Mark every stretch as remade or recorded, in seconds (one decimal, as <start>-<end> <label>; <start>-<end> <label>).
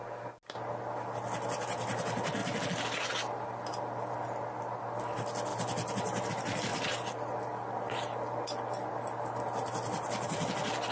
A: 0.0-10.9 recorded